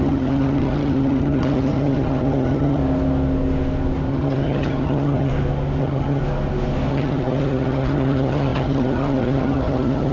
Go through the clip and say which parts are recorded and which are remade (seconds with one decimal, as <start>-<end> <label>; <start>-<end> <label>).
0.0-2.8 remade; 2.8-4.1 recorded; 4.1-5.3 remade; 5.3-5.8 recorded; 5.8-6.2 remade; 6.2-6.9 recorded; 6.9-10.1 remade